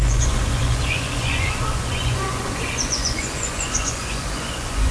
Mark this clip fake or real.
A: fake